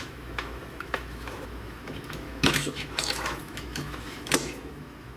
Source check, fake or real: fake